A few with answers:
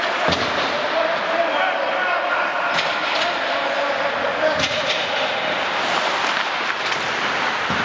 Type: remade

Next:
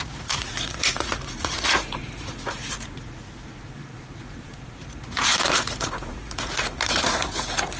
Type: remade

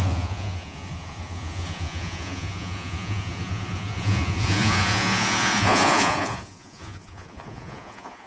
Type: remade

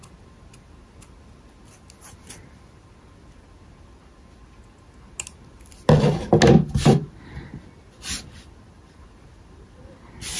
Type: recorded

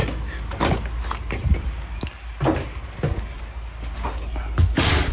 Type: recorded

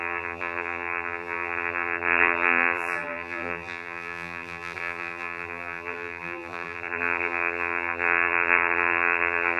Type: remade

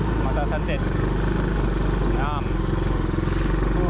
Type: recorded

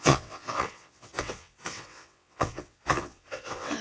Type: remade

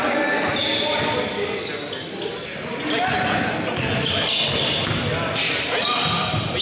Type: recorded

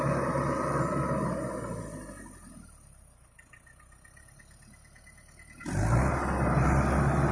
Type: recorded